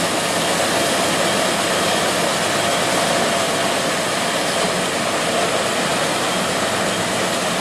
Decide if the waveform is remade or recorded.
recorded